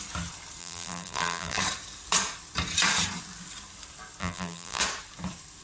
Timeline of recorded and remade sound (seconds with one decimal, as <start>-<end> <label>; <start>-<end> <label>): 0.0-0.6 recorded; 0.6-1.6 remade; 1.6-4.2 recorded; 4.2-4.8 remade; 4.8-5.6 recorded